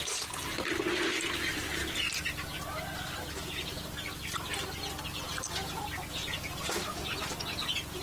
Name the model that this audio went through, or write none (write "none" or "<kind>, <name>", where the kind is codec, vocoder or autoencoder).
none